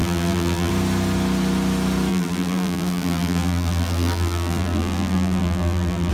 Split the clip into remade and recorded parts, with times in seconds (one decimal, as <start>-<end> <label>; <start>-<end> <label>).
0.0-0.7 remade; 0.7-2.1 recorded; 2.1-6.1 remade